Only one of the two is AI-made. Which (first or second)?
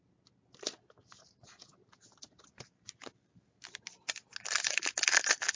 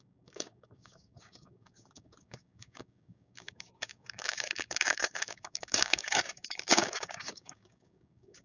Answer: second